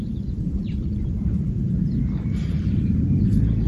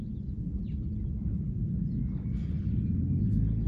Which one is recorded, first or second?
second